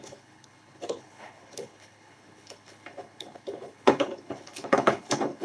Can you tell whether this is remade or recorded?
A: remade